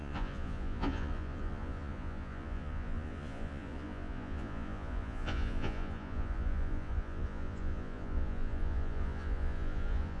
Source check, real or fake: fake